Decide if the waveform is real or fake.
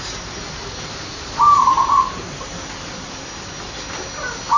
real